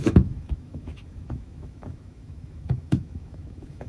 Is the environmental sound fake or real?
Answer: fake